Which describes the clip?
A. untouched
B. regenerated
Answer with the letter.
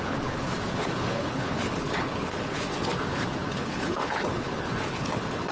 B